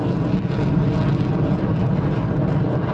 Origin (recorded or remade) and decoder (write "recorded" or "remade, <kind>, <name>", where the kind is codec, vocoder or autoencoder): recorded